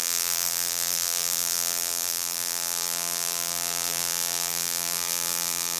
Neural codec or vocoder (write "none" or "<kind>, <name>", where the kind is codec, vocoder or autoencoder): vocoder, BigVGAN v2